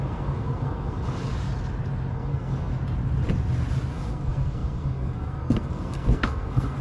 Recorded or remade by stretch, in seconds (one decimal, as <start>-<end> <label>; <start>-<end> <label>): 0.0-1.3 remade; 1.3-2.1 recorded; 2.1-2.7 remade; 2.7-3.9 recorded; 3.9-6.8 remade